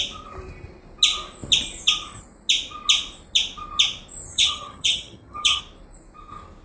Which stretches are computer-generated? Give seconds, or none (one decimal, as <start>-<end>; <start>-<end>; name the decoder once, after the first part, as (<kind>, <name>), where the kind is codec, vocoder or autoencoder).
4.3-5.6 (vocoder, HiFi-GAN)